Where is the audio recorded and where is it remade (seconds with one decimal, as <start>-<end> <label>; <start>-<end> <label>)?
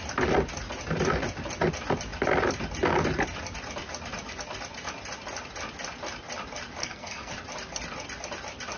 0.0-6.8 recorded; 6.8-7.3 remade; 7.3-8.8 recorded